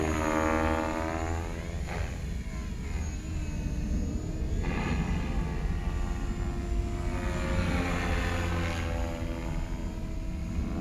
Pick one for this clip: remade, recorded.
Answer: recorded